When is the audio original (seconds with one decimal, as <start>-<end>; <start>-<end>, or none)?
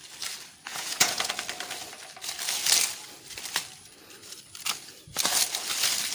0.0-0.7; 1.3-6.1